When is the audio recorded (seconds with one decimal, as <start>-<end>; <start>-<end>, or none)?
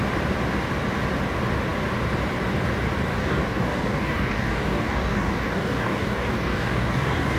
0.0-3.1